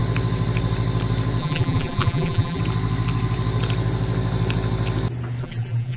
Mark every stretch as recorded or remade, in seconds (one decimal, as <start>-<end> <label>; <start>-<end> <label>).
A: 0.0-1.4 recorded; 1.4-2.6 remade; 2.6-5.4 recorded; 5.4-6.0 remade